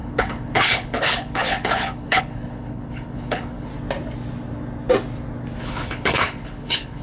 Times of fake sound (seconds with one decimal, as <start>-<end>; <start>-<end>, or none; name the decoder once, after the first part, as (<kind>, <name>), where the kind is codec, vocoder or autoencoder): 0.0-3.7 (codec, HILCodec); 5.6-7.0